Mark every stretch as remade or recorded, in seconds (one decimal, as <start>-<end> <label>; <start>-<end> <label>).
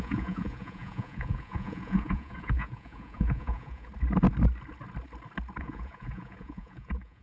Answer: 0.0-3.9 remade; 3.9-5.6 recorded; 5.6-7.2 remade